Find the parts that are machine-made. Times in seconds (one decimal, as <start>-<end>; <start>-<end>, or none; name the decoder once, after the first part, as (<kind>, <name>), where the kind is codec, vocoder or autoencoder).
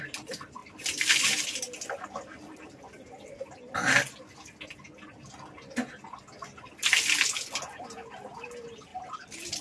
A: 0.6-2.8 (vocoder, BigVGAN v2); 8.9-9.6